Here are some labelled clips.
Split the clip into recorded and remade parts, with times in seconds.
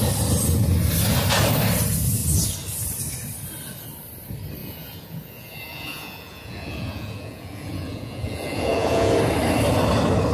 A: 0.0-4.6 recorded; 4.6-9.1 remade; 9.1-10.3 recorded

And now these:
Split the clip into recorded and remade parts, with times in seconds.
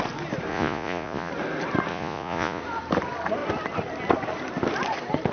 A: 0.0-0.5 recorded; 0.5-1.3 remade; 1.3-1.9 recorded; 1.9-2.6 remade; 2.6-5.3 recorded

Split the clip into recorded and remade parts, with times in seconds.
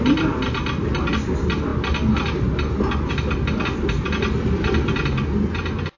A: 0.0-6.0 recorded